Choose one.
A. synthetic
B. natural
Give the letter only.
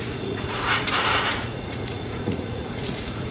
A